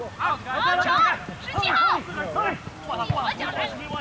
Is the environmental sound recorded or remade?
recorded